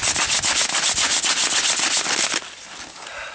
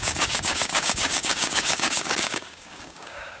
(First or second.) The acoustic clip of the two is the first